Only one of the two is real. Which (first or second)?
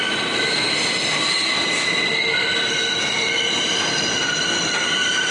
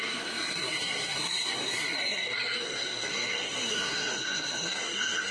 first